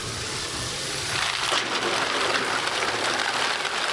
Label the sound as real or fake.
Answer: real